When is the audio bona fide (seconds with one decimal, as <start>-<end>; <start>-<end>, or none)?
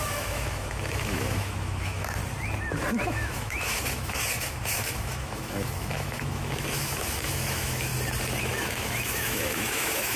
2.2-2.9; 7.9-8.4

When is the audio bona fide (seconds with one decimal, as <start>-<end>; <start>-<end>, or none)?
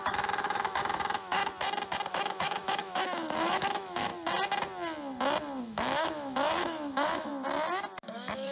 1.4-2.1; 4.1-5.6; 7.3-8.0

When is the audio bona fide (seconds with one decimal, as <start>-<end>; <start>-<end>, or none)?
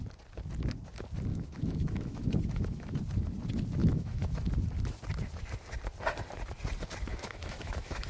0.0-1.3; 3.0-3.8; 4.5-7.1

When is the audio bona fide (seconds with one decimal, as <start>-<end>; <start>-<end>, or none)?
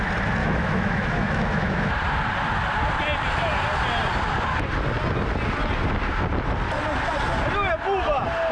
0.0-0.4; 1.9-8.5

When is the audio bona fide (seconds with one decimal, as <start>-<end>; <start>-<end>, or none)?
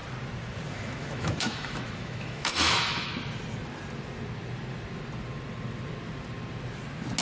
0.0-0.7; 3.1-7.2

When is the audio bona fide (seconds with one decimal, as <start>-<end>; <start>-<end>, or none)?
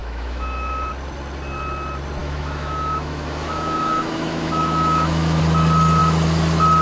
0.9-2.2; 5.4-6.8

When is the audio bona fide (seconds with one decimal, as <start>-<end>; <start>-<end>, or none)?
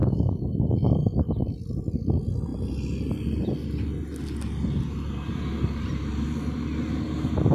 1.2-7.5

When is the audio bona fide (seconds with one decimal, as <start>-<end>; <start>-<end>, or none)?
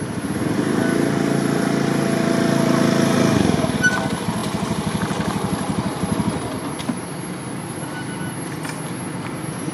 0.0-9.7